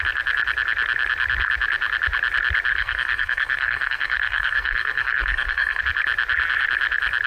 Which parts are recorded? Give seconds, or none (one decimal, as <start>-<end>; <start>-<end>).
0.0-2.7; 5.8-7.3